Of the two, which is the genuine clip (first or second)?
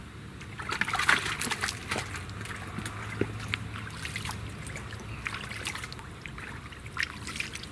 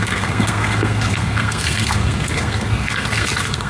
first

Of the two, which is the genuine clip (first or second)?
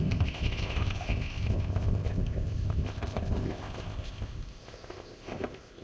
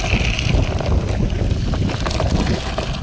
second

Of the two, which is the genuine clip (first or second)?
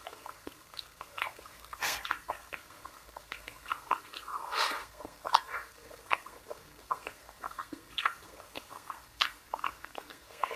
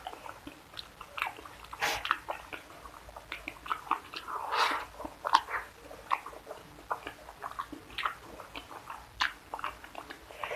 second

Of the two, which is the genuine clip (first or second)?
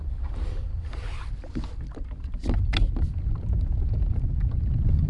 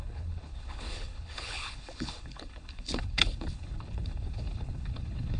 first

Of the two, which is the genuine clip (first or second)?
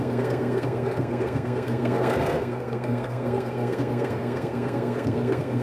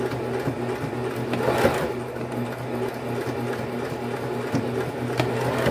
second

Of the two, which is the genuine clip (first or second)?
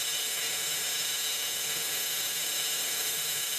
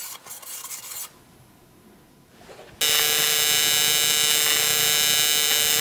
second